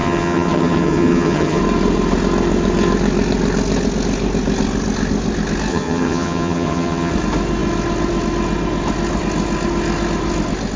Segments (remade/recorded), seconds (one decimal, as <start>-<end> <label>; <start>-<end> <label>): 0.0-1.6 remade; 1.6-5.7 recorded; 5.7-7.1 remade; 7.1-10.8 recorded